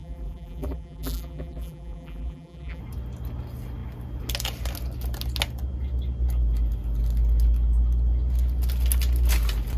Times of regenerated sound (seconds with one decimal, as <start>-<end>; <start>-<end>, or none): 0.0-2.8